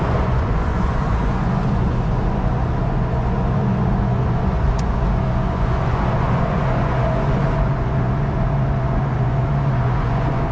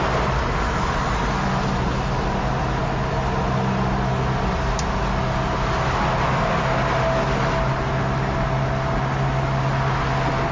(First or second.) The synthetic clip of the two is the first